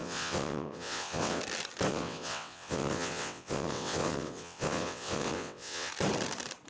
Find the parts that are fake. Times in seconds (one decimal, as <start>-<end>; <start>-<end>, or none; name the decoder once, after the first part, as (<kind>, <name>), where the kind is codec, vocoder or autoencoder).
0.0-1.4 (vocoder, WaveNeXt); 1.9-5.9